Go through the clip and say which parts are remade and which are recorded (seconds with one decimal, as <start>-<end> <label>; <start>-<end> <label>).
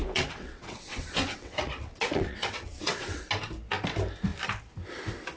0.0-3.2 remade; 3.2-5.4 recorded